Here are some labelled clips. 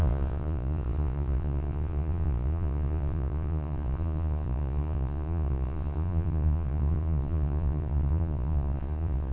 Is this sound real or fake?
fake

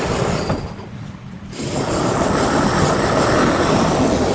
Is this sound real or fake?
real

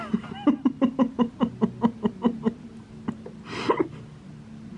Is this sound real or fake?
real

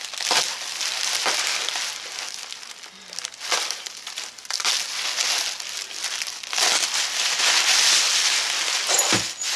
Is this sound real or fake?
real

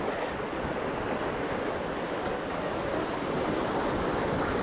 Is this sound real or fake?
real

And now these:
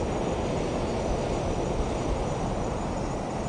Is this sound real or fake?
real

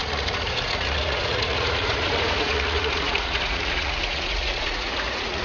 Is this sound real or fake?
fake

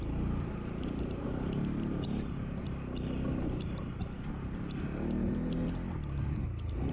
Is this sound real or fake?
real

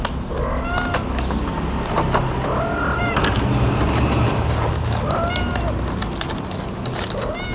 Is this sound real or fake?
real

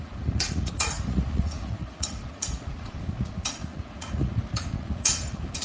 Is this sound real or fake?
fake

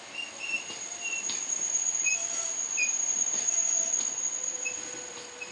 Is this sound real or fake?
real